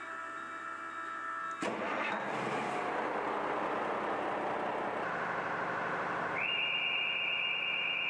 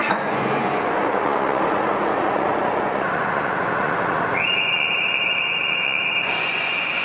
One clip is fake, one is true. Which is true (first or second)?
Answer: first